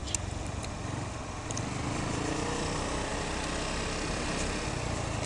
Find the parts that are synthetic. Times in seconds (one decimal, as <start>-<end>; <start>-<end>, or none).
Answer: none